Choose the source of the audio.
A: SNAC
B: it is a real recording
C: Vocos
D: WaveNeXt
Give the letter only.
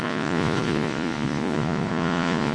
C